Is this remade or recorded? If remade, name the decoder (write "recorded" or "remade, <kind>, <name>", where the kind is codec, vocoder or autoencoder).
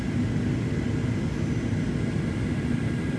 recorded